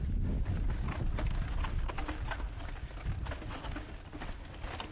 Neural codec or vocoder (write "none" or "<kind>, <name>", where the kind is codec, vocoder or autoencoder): none